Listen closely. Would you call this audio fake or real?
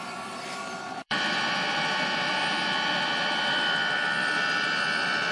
fake